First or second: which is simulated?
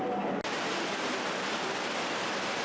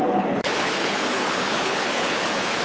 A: second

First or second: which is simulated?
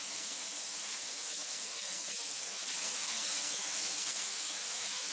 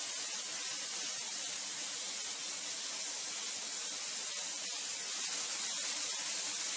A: first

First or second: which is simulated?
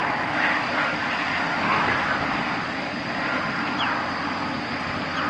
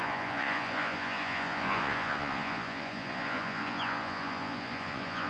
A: second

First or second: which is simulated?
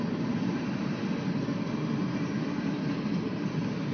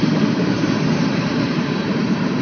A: second